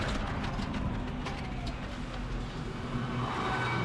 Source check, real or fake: real